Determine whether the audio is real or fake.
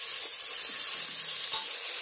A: real